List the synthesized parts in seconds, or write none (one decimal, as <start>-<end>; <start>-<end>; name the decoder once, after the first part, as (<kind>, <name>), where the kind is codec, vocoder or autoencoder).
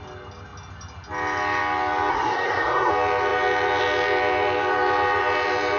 2.1-2.9 (codec, SNAC)